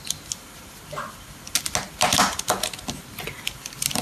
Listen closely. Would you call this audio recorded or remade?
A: recorded